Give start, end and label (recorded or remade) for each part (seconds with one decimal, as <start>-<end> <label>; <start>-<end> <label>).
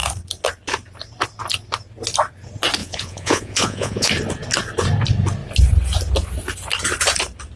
0.0-2.8 recorded; 2.8-4.1 remade; 4.1-7.6 recorded